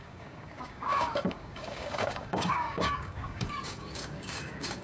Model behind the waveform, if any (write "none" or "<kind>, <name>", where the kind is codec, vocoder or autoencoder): codec, DAC